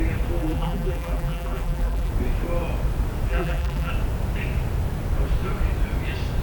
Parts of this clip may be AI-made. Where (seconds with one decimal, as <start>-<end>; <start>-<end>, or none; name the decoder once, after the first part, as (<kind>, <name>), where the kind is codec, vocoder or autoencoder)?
0.4-2.1 (vocoder, BigVGAN v2); 3.3-3.9